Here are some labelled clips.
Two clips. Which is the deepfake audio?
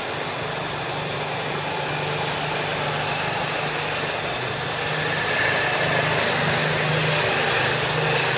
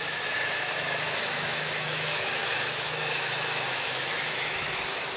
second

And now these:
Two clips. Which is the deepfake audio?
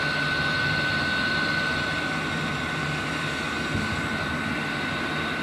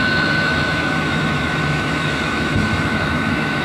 second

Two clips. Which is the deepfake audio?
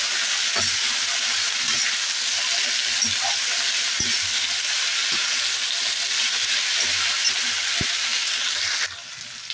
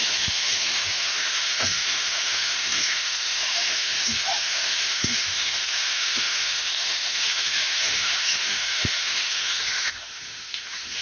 second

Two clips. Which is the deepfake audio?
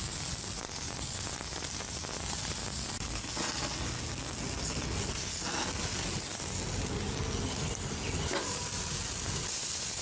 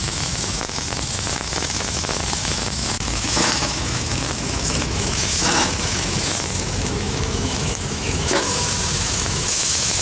second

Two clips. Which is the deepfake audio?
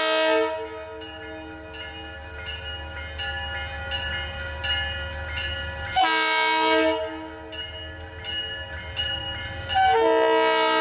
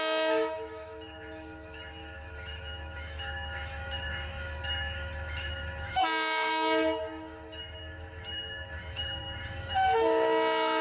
second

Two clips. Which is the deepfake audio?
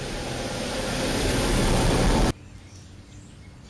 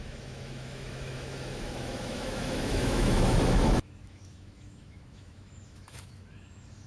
second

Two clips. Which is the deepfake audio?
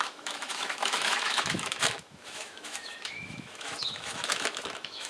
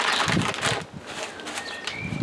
first